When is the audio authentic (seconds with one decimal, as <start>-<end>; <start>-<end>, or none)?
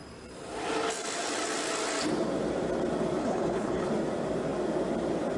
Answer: 0.0-3.2; 3.9-5.4